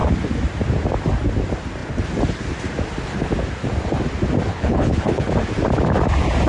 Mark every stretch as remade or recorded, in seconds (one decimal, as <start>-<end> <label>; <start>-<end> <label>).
0.0-4.5 recorded; 4.5-5.3 remade; 5.3-6.5 recorded